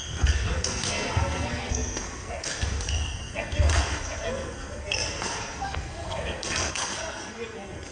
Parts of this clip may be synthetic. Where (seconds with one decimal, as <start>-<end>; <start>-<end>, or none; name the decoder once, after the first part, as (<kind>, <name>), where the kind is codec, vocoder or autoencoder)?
0.0-7.9 (codec, SNAC)